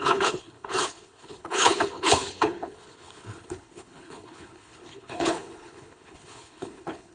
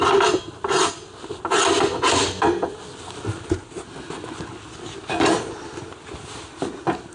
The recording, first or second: second